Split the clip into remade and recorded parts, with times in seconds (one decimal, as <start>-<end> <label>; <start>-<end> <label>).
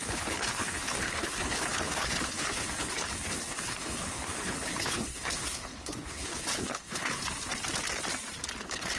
0.0-7.2 remade; 7.2-8.6 recorded; 8.6-9.0 remade